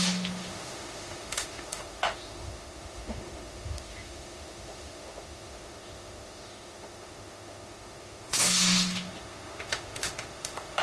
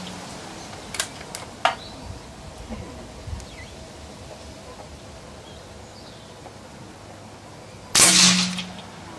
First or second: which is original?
second